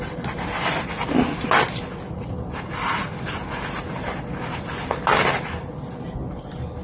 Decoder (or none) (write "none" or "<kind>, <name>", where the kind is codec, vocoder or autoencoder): none